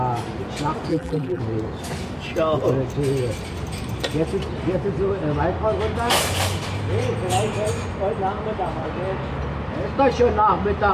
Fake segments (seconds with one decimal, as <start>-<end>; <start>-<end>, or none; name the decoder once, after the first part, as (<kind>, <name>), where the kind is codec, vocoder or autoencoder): 0.9-1.4 (vocoder, BigVGAN v2)